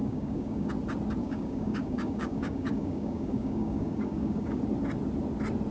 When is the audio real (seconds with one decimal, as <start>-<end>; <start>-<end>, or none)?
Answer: 0.7-1.2; 4.6-5.7